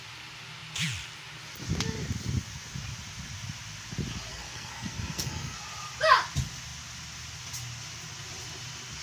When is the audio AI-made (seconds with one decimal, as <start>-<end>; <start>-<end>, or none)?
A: 4.3-5.6